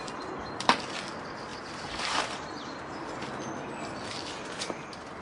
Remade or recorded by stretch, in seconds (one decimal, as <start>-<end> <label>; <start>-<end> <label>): 0.0-1.5 recorded; 1.5-3.2 remade; 3.2-5.2 recorded